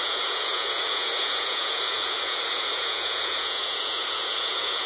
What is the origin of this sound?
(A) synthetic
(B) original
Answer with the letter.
A